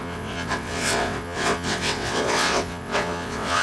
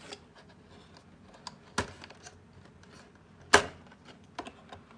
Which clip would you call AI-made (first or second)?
first